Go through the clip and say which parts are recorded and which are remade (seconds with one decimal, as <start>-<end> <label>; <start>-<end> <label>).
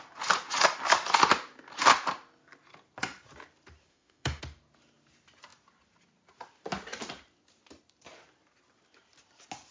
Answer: 0.0-3.9 recorded; 3.9-4.4 remade; 4.4-9.7 recorded